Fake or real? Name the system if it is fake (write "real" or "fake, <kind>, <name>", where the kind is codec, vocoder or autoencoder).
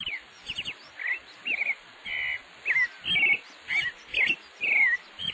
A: real